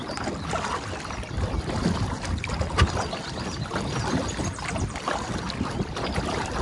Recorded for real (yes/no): yes